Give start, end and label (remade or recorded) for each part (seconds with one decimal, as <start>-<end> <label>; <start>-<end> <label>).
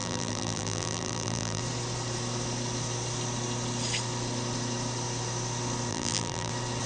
0.0-1.6 remade; 1.6-5.9 recorded; 5.9-6.5 remade; 6.5-6.9 recorded